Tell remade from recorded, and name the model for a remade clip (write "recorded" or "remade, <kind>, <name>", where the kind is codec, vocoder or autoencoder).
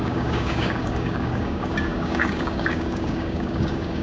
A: remade, codec, DAC